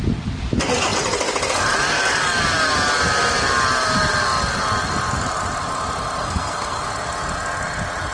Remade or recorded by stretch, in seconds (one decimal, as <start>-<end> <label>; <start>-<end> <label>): 0.0-6.2 recorded; 6.2-6.8 remade; 6.8-8.1 recorded